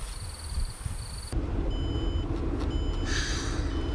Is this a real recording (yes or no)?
yes